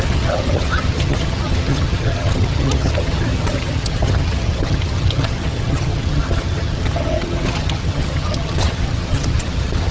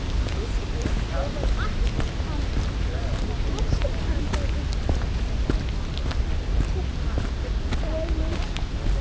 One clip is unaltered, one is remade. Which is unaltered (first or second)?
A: second